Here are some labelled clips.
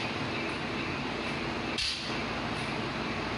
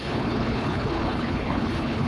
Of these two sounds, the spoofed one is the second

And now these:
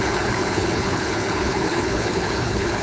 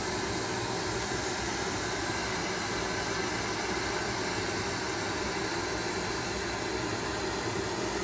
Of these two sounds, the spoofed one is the first